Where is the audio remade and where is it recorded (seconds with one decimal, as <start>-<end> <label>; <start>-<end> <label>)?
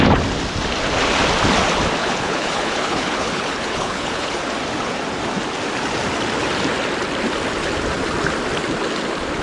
0.0-2.0 recorded; 2.0-4.4 remade; 4.4-9.4 recorded